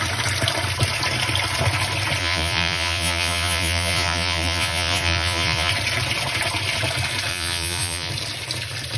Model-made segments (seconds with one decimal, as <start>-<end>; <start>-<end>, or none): 2.2-5.7; 7.3-8.1